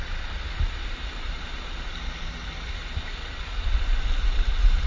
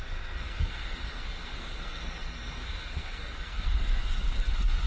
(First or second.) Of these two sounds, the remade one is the second